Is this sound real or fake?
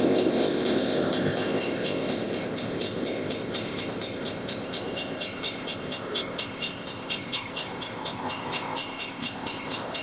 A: fake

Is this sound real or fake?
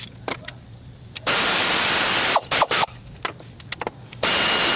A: real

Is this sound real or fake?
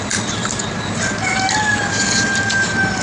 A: real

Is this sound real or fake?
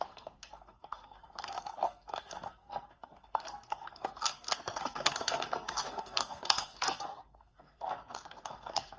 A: fake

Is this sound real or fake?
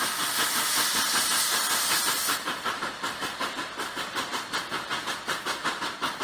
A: real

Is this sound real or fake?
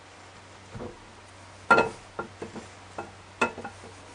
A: real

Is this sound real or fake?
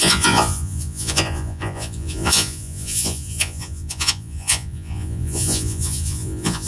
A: fake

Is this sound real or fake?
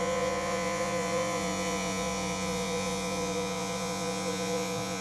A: fake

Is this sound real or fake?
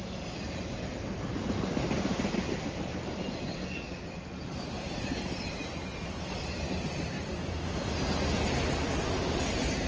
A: real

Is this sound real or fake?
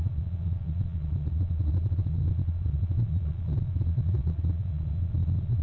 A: fake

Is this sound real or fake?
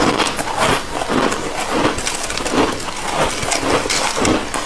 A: real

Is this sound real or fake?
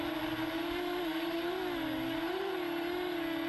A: real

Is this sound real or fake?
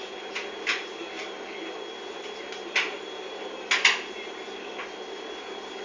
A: real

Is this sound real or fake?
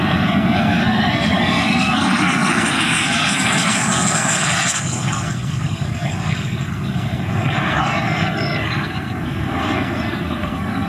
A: fake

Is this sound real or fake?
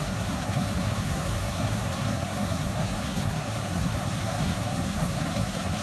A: fake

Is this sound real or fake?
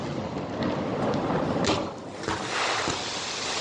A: real